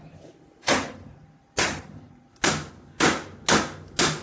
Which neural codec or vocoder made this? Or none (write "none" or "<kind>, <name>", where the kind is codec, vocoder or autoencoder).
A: none